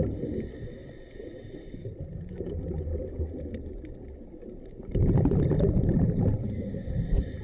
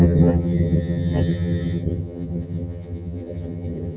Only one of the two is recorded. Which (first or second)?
first